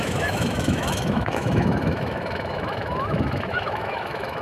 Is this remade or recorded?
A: remade